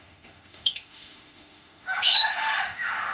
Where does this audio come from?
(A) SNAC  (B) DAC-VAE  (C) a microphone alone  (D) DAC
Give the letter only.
B